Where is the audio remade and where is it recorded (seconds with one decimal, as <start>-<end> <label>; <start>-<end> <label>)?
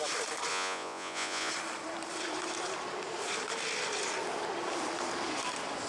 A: 0.0-0.5 recorded; 0.5-1.5 remade; 1.5-5.9 recorded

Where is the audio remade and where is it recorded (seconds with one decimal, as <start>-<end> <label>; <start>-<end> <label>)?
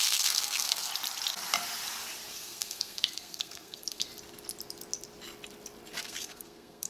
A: 0.0-0.9 remade; 0.9-2.3 recorded; 2.3-4.1 remade; 4.1-6.0 recorded; 6.0-6.9 remade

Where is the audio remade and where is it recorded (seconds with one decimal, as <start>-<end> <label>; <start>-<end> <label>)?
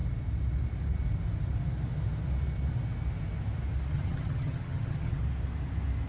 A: 0.0-3.9 recorded; 3.9-5.2 remade; 5.2-6.1 recorded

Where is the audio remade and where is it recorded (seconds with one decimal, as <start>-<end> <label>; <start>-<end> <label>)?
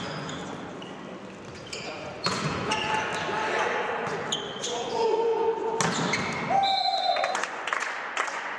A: 0.0-0.4 remade; 0.4-1.8 recorded; 1.8-3.1 remade; 3.1-4.6 recorded; 4.6-5.3 remade; 5.3-6.8 recorded; 6.8-8.6 remade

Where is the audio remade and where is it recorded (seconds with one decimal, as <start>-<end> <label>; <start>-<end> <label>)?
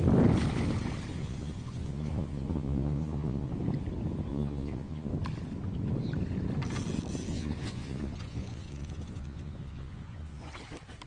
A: 0.0-1.1 recorded; 1.1-3.5 remade; 3.5-4.3 recorded; 4.3-5.1 remade; 5.1-7.3 recorded; 7.3-10.5 remade; 10.5-11.1 recorded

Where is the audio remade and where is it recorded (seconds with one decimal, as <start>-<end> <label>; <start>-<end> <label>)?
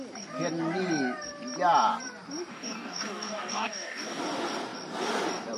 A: 0.0-2.5 recorded; 2.5-4.2 remade; 4.2-5.6 recorded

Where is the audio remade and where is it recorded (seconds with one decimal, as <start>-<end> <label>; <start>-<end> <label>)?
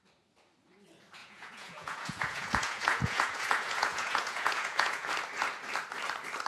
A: 0.0-1.2 recorded; 1.2-5.1 remade; 5.1-6.5 recorded